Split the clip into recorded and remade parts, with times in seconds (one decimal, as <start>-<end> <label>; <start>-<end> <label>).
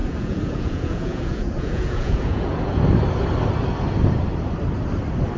0.0-2.8 remade; 2.8-5.4 recorded